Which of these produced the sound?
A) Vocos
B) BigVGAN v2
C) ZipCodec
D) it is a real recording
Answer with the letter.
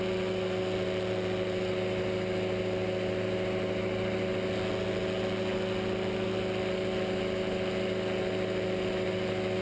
D